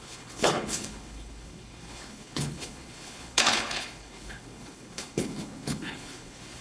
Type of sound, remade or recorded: remade